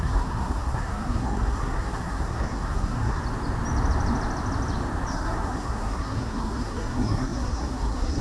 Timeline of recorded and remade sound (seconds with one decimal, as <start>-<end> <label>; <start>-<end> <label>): 0.0-3.2 remade; 3.2-5.1 recorded; 5.1-8.2 remade